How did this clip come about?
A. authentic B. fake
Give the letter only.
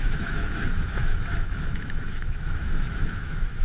B